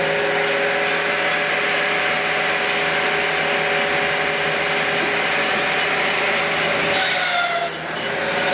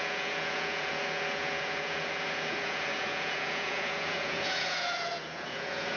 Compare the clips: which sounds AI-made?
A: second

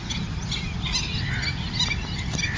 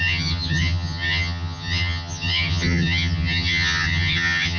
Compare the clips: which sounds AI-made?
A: second